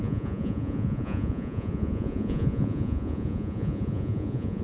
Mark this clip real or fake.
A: fake